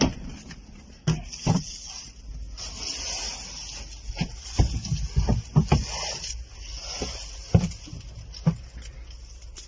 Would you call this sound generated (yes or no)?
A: no